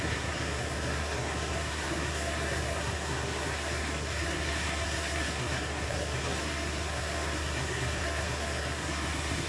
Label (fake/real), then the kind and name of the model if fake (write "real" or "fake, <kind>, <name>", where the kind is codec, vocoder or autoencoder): fake, codec, SNAC